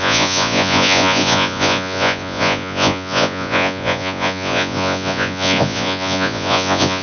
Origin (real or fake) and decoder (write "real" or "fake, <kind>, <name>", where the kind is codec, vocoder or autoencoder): fake, vocoder, Vocos